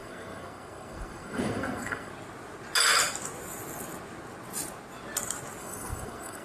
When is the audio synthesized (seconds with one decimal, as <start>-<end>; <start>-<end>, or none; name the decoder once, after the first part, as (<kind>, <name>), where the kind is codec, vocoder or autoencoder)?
0.0-2.1 (codec, SNAC); 5.6-6.4